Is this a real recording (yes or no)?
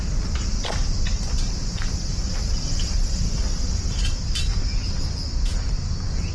no